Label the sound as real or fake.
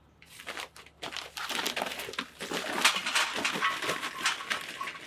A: real